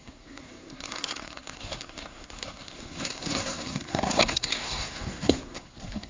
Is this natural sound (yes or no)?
no